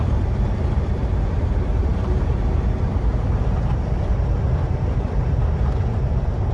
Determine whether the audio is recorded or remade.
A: remade